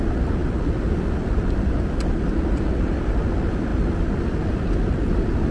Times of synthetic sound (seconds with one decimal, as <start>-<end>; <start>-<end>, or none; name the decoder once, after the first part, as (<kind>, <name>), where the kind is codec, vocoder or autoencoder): none